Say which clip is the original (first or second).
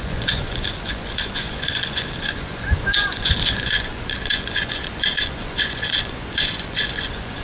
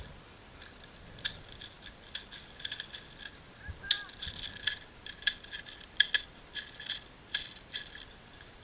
second